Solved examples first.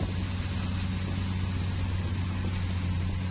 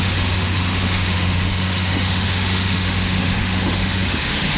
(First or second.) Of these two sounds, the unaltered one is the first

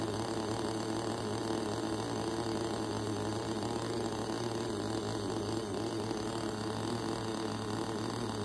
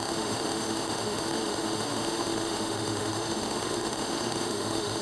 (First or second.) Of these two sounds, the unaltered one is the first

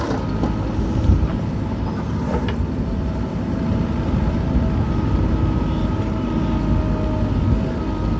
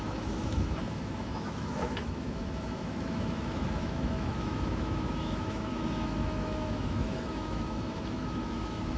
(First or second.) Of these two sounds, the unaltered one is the first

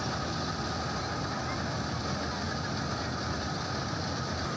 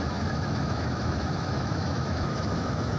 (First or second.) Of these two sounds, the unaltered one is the first